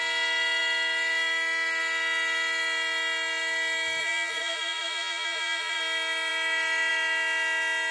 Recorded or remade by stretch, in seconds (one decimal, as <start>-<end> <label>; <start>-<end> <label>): 0.0-4.0 recorded; 4.0-5.8 remade; 5.8-7.9 recorded